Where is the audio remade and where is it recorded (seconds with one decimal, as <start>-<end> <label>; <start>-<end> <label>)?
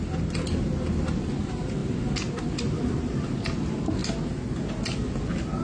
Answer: 0.0-5.6 recorded